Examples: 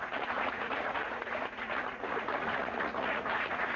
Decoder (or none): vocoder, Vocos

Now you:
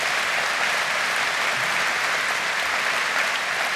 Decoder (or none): none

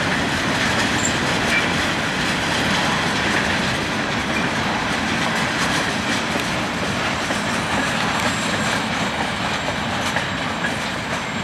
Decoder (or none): none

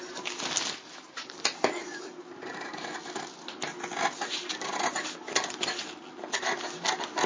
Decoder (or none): none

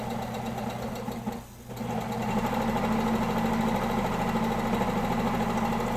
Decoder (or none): none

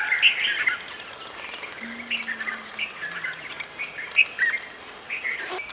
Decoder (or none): none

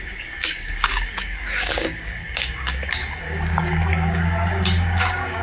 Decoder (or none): codec, DAC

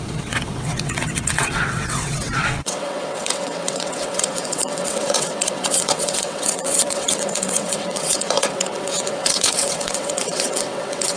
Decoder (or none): vocoder, WaveNeXt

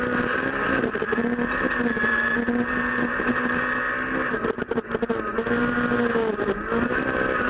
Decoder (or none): none